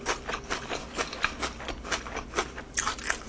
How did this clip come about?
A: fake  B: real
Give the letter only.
B